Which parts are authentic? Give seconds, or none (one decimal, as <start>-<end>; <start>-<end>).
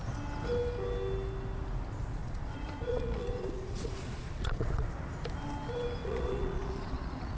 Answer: 0.0-2.1; 4.7-6.0